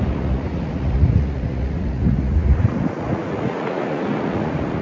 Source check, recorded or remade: remade